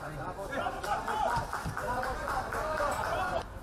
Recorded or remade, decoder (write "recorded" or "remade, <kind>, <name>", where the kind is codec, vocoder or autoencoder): remade, vocoder, BigVGAN v2